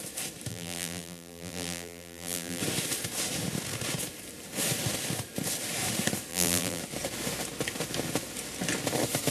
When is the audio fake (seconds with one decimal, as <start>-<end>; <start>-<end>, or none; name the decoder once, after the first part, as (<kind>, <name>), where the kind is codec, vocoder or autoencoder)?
0.5-2.6 (vocoder, BigVGAN v2); 6.3-6.8